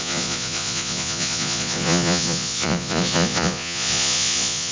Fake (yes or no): yes